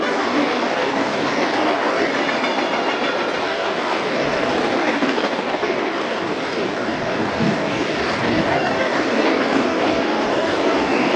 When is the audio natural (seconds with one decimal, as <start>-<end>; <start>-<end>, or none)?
2.1-3.4

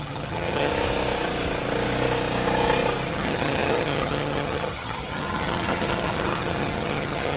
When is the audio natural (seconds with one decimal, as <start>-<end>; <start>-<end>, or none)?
0.7-3.1

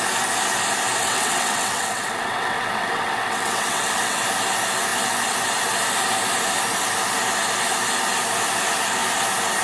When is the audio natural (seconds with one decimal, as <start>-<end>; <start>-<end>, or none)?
0.0-1.0; 4.2-9.6

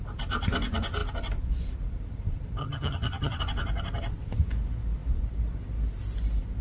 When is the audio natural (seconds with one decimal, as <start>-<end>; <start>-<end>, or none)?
0.0-2.6; 3.4-6.6